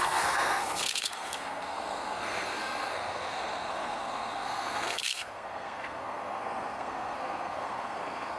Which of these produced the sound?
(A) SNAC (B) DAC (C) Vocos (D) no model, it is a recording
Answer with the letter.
A